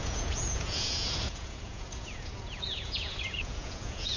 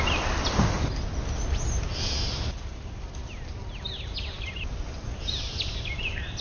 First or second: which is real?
second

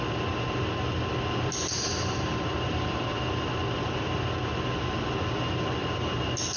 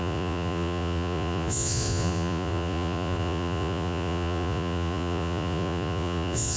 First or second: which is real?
first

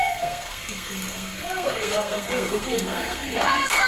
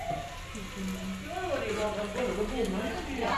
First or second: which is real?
second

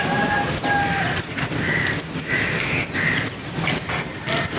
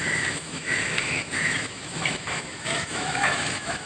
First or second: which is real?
first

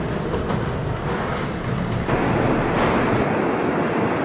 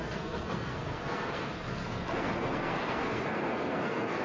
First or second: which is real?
first